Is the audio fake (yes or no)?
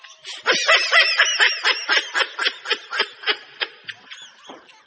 no